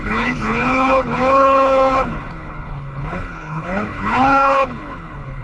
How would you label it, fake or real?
fake